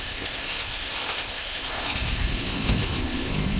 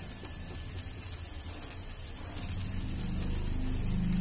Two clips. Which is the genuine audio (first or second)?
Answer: second